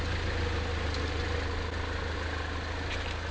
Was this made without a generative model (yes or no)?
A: yes